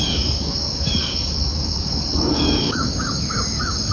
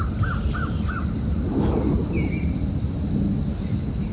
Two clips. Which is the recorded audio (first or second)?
second